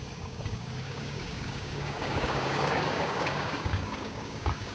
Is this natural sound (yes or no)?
no